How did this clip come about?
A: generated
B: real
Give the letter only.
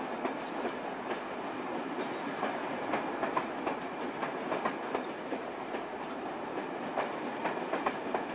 B